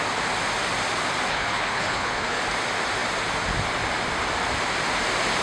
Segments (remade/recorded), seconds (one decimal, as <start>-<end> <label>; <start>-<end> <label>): 0.0-1.3 recorded; 1.3-2.4 remade; 2.4-5.4 recorded